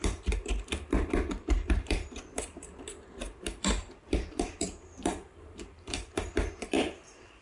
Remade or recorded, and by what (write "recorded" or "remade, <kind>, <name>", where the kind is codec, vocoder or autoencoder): remade, vocoder, BigVGAN v2